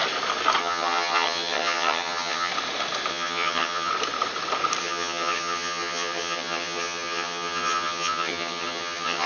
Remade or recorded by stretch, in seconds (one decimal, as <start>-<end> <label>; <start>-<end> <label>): 0.0-0.6 recorded; 0.6-2.5 remade; 2.5-3.1 recorded; 3.1-3.9 remade; 3.9-4.8 recorded; 4.8-9.3 remade